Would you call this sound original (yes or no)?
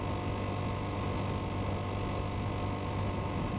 yes